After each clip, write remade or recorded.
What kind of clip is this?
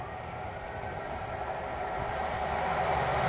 recorded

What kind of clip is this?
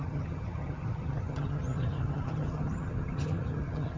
remade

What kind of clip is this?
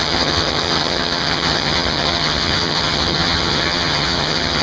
remade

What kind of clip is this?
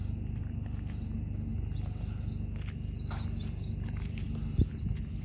recorded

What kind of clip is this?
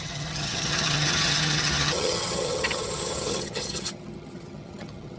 remade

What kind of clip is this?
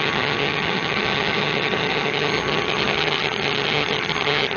remade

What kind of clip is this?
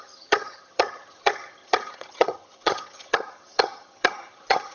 remade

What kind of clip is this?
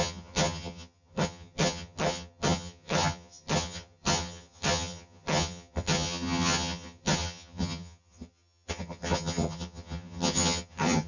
remade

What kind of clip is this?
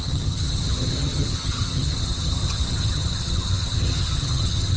remade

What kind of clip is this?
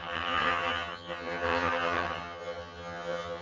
remade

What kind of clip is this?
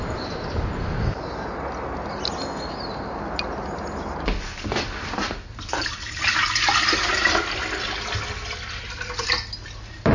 recorded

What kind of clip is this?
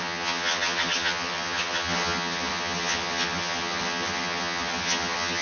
remade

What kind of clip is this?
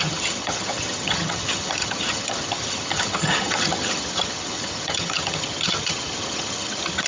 remade